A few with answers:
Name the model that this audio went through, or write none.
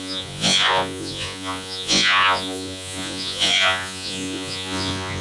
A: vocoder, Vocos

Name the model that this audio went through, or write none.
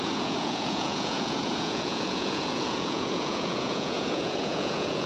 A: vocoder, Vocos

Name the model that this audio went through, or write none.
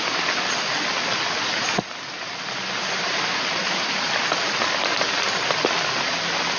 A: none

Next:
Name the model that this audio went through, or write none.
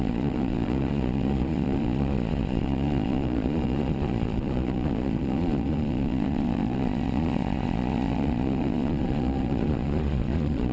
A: vocoder, Vocos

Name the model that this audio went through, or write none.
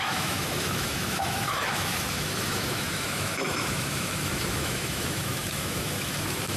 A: autoencoder, DAC-VAE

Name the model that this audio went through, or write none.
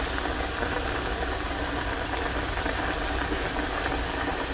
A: none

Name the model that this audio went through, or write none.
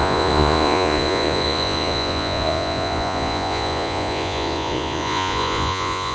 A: vocoder, Vocos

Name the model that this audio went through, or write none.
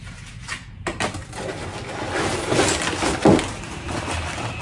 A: none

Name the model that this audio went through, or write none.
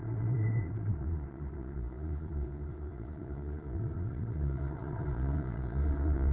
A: vocoder, Vocos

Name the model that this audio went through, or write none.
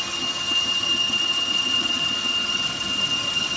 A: vocoder, HiFi-GAN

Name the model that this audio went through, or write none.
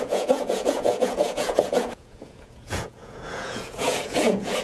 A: vocoder, Vocos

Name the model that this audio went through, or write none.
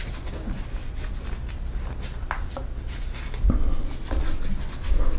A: none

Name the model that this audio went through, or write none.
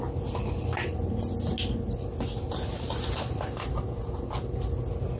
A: none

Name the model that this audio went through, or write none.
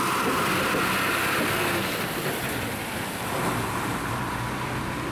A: none